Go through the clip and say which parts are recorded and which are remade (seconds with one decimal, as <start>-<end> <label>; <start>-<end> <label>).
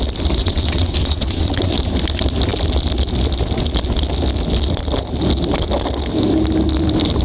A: 0.0-0.4 recorded; 0.4-1.8 remade; 1.8-7.2 recorded